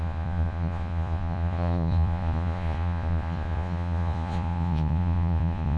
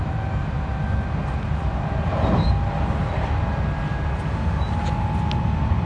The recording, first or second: second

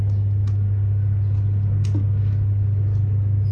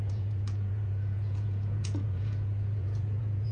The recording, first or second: first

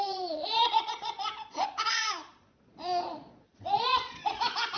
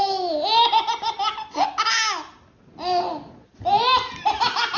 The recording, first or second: second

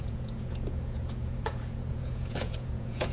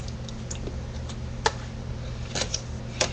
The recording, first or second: second